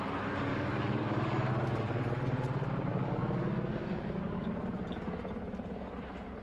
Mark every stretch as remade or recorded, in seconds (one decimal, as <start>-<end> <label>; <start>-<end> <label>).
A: 0.0-0.5 recorded; 0.5-1.5 remade; 1.5-2.9 recorded; 2.9-4.5 remade; 4.5-6.4 recorded